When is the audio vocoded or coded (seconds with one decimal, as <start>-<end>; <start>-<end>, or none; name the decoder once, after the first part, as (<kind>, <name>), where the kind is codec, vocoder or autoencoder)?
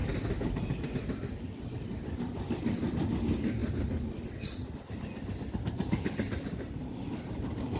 none